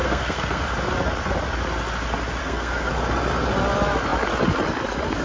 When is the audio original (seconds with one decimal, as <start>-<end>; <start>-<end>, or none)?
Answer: 0.6-2.4; 2.9-5.2